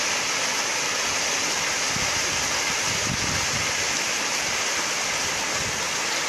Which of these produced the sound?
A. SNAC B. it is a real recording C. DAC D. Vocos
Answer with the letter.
B